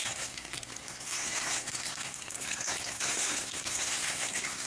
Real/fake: fake